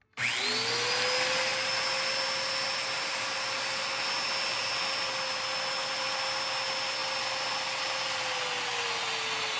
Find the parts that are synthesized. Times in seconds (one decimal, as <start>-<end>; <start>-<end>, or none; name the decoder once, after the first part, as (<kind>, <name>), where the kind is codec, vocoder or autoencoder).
none